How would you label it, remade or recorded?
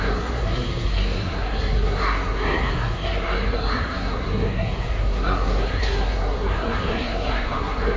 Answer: remade